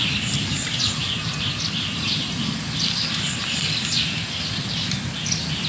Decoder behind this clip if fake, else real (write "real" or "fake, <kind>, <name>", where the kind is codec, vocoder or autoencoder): real